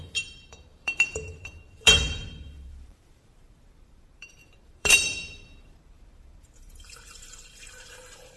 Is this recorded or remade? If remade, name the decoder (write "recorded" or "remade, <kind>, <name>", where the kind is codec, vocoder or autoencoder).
remade, vocoder, BigVGAN v2